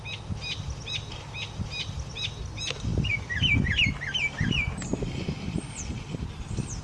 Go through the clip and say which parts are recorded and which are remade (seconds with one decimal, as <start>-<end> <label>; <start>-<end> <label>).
0.0-6.8 recorded